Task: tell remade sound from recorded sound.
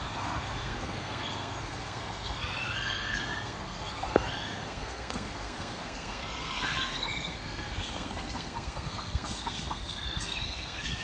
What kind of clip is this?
remade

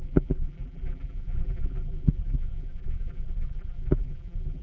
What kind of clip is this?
remade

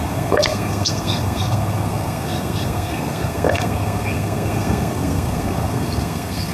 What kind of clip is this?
remade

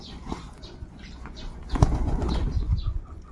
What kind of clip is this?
remade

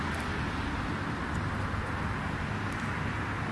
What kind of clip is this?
recorded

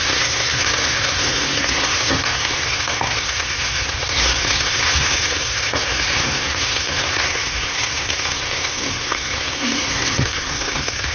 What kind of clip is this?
remade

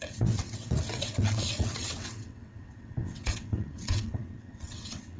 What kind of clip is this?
remade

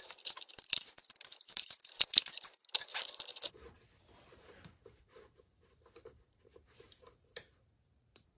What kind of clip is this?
remade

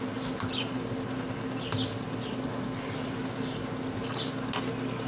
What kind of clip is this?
recorded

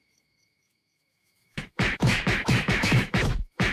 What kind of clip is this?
remade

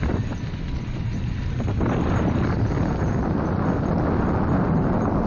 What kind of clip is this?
recorded